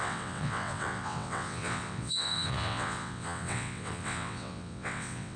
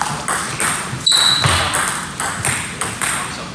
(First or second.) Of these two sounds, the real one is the second